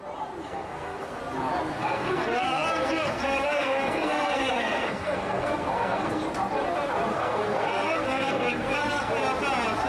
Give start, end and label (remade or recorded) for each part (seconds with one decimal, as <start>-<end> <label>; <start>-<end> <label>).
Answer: 0.0-0.4 recorded; 0.4-1.2 remade; 1.2-1.8 recorded; 1.8-6.2 remade; 6.2-7.1 recorded; 7.1-9.1 remade; 9.1-9.9 recorded